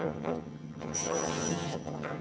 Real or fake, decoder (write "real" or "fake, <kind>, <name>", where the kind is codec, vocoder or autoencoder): fake, vocoder, HiFi-GAN